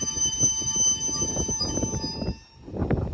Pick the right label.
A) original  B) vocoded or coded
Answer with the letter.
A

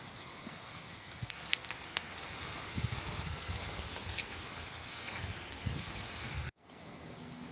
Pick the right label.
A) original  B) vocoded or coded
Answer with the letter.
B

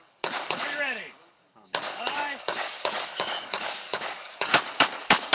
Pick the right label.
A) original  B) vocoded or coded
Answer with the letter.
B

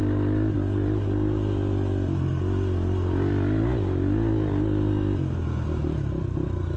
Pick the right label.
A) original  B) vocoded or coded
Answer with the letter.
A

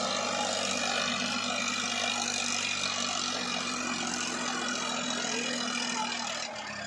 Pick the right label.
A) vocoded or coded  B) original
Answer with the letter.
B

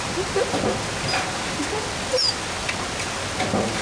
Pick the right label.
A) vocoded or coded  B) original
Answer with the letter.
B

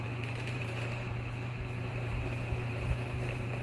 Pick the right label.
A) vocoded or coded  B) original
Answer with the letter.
A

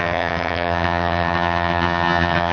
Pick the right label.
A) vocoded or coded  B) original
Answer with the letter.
A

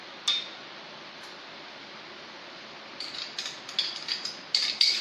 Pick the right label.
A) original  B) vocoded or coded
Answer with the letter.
A